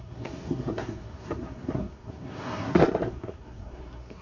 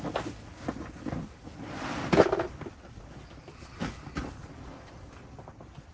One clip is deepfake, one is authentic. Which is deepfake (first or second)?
first